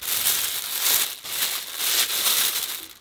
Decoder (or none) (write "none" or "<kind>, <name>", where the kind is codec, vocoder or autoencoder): none